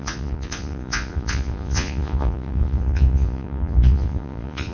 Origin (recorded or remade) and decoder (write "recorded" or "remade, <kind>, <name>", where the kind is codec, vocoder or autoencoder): remade, vocoder, Vocos